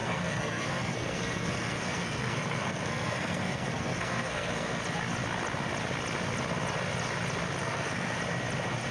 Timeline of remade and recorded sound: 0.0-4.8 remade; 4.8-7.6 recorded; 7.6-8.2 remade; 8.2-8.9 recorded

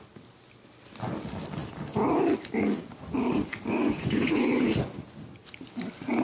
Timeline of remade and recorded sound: 0.0-3.8 recorded; 3.8-4.7 remade; 4.7-6.2 recorded

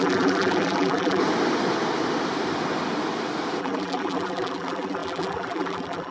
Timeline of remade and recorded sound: 0.0-1.2 remade; 1.2-3.6 recorded; 3.6-6.1 remade

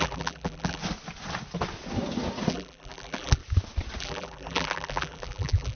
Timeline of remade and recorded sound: 0.0-0.8 remade; 0.8-2.5 recorded; 2.5-3.4 remade; 3.4-4.0 recorded; 4.0-5.8 remade

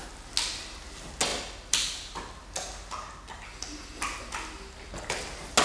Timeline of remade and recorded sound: 0.0-5.6 recorded

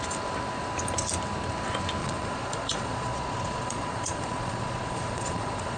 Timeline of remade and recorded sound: 0.0-2.0 recorded; 2.0-5.8 remade